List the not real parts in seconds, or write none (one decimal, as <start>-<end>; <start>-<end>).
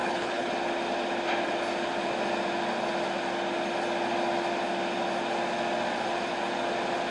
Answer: 0.0-0.5